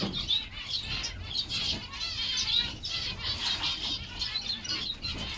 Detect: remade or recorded recorded